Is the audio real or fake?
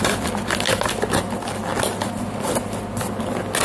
real